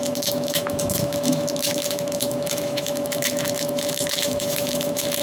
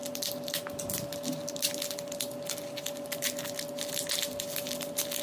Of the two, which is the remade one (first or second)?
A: first